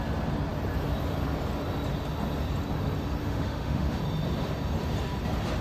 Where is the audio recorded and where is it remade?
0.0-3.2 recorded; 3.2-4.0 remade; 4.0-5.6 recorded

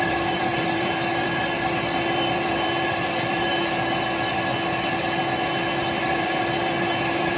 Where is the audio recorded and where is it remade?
0.0-3.5 remade; 3.5-5.8 recorded; 5.8-7.4 remade

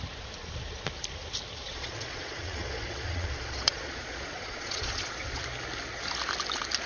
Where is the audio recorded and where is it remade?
0.0-1.6 recorded; 1.6-5.4 remade; 5.4-6.9 recorded